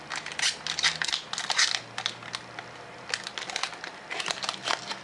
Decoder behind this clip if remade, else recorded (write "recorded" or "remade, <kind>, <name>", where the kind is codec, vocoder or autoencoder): recorded